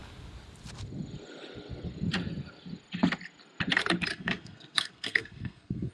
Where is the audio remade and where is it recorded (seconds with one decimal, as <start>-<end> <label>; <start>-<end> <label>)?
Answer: 0.0-4.1 recorded; 4.1-5.9 remade